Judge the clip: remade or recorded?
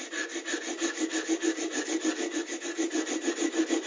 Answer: recorded